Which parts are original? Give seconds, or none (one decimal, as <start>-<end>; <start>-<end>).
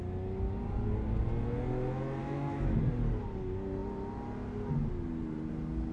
0.0-2.2; 2.8-5.9